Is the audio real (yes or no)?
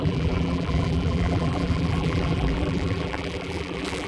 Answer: no